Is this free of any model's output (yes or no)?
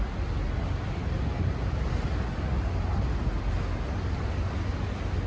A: yes